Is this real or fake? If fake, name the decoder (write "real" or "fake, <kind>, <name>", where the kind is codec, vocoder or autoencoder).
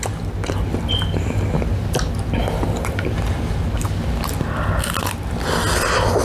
real